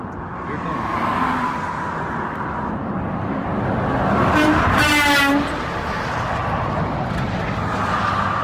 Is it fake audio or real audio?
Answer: real